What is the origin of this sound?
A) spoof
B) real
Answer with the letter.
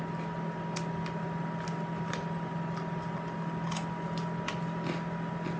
B